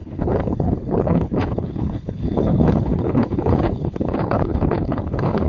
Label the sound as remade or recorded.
remade